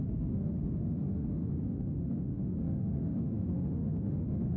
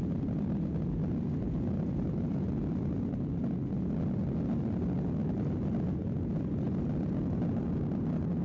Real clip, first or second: second